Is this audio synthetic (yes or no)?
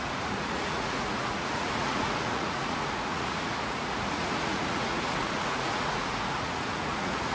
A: yes